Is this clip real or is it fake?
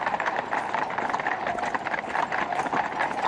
real